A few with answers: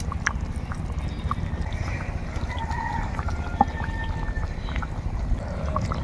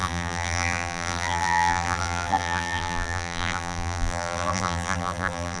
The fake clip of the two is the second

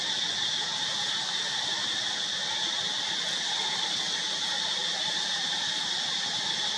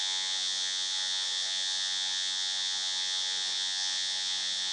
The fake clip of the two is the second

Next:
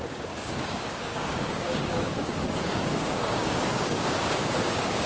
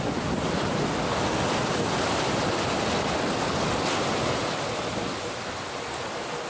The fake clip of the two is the first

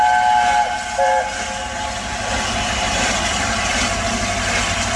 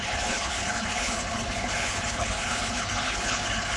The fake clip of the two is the second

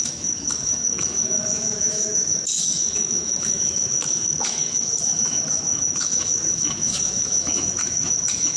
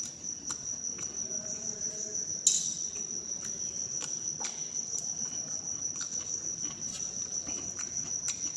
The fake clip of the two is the first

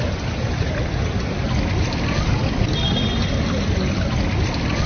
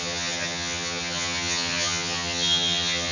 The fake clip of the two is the second